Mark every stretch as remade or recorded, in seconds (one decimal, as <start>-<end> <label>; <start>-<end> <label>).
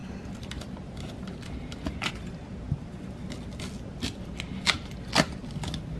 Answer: 0.0-6.0 recorded